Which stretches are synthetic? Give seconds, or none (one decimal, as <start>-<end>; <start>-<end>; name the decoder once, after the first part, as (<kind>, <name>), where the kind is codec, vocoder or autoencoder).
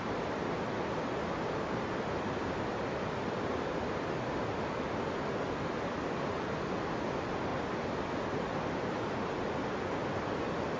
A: none